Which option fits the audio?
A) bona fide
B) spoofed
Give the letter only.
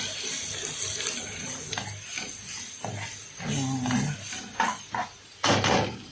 A